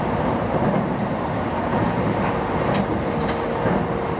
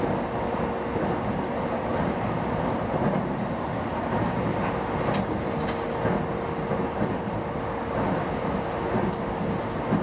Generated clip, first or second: first